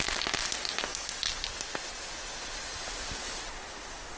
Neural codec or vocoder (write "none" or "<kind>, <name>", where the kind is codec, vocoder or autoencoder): none